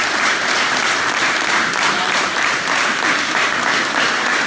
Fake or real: fake